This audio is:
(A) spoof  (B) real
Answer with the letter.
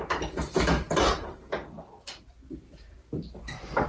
B